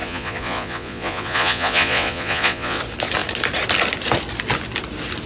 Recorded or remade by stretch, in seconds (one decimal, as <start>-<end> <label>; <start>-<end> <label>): 0.0-2.8 remade; 2.8-5.3 recorded